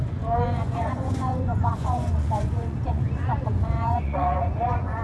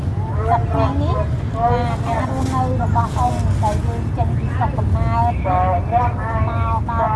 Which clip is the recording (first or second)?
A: second